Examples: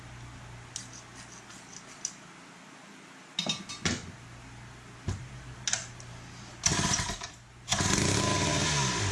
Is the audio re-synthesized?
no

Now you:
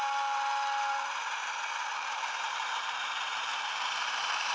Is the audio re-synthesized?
yes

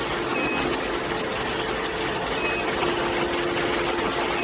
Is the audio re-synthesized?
no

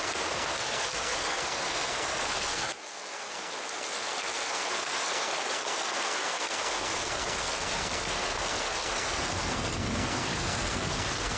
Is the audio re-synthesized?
yes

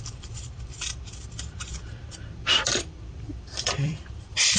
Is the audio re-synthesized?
yes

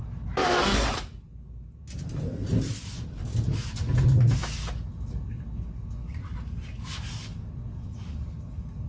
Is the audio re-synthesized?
no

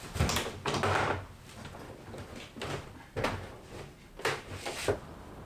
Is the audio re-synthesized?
no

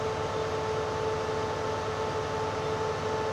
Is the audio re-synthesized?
no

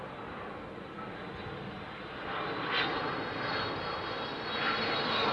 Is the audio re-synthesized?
no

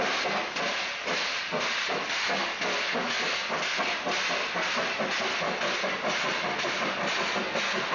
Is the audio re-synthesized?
no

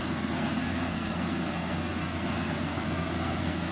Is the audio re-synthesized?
yes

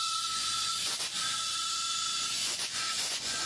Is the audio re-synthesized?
yes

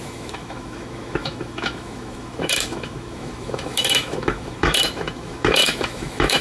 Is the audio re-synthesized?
yes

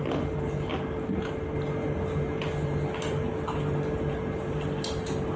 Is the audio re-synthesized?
no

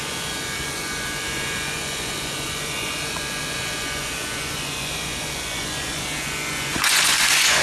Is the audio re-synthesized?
yes